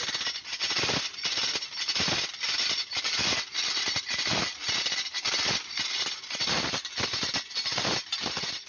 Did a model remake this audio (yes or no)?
no